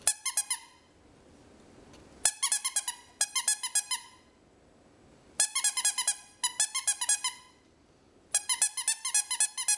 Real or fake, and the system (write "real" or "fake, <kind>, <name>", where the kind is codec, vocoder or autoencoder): real